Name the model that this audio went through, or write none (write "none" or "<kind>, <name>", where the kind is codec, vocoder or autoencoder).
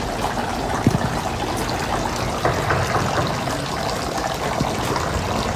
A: none